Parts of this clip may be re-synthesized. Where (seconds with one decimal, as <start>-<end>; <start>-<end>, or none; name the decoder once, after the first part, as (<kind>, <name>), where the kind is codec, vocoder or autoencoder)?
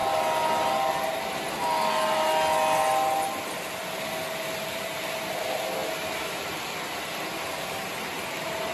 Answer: none